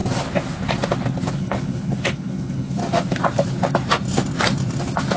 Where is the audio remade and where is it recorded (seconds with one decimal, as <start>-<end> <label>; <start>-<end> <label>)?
0.0-1.3 recorded; 1.3-2.8 remade; 2.8-5.2 recorded